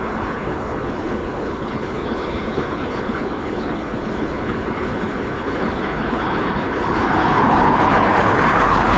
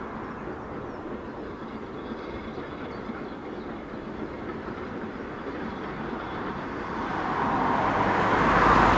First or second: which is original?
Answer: second